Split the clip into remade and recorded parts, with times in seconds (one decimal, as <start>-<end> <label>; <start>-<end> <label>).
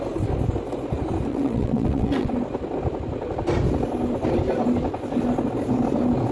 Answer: 0.0-1.3 recorded; 1.3-2.3 remade; 2.3-6.3 recorded